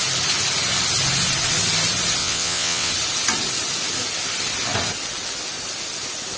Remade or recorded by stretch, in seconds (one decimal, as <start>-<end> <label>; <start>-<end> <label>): 0.0-2.2 recorded; 2.2-2.9 remade; 2.9-6.4 recorded